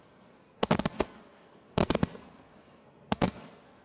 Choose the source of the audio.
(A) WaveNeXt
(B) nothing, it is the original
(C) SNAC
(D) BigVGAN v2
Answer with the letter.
C